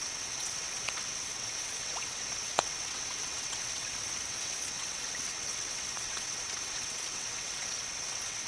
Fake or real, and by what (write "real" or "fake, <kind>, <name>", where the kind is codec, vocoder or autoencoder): fake, vocoder, WaveNeXt